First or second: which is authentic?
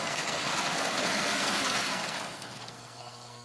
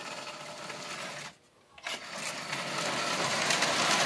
second